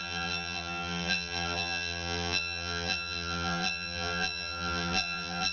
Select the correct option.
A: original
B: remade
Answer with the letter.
B